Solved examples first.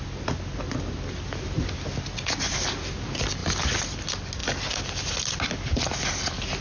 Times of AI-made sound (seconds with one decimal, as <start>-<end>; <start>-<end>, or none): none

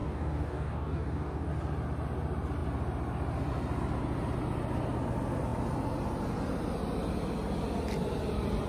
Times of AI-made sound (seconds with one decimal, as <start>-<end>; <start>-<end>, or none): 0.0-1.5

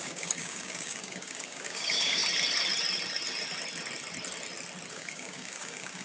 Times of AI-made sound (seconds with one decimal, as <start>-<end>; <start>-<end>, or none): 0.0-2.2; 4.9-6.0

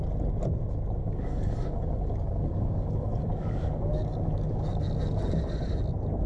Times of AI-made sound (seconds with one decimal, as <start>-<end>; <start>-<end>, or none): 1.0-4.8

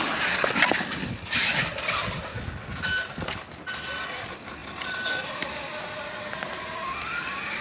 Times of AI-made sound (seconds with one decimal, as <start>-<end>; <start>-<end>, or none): none